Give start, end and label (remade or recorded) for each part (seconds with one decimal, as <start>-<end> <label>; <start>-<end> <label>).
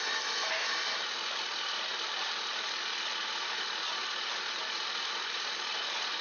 0.0-6.2 recorded